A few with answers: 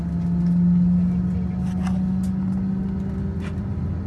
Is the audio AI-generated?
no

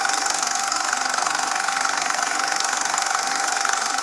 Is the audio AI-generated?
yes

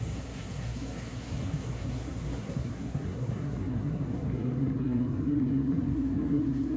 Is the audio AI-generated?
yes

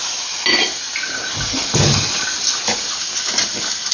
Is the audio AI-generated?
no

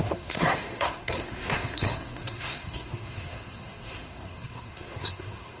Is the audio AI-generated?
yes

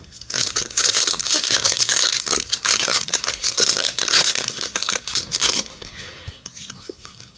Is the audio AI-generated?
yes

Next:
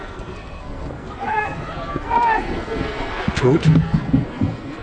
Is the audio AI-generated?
yes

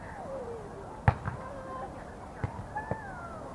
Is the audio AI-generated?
no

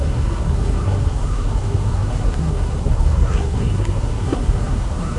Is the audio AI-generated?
yes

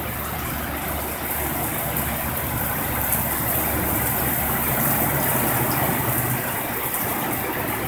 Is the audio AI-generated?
no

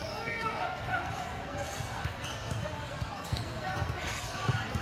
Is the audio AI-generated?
yes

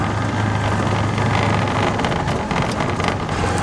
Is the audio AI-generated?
no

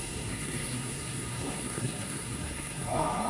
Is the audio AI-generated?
yes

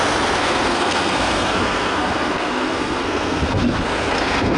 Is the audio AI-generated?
yes